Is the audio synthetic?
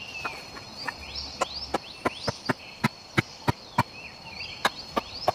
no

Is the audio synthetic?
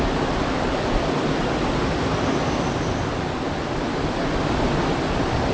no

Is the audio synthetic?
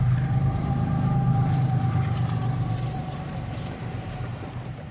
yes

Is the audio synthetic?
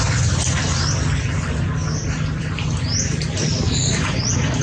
no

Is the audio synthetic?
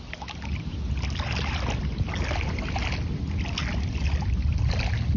no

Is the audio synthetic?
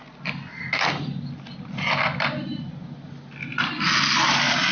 no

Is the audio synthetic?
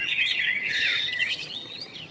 yes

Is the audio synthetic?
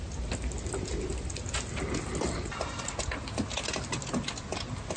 no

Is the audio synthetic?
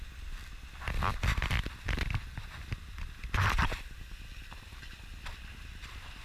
no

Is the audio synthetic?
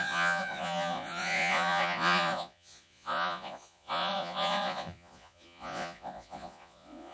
yes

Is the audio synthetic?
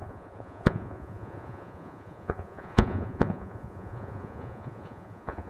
yes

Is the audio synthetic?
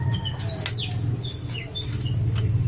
no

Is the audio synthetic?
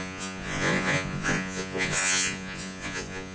yes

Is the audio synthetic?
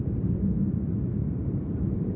yes